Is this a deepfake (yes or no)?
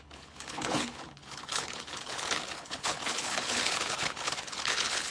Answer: yes